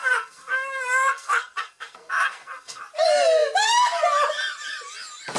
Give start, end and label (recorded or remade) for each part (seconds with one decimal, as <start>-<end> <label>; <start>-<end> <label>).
0.0-2.8 remade; 2.8-5.4 recorded